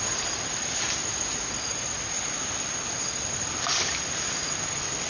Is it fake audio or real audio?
real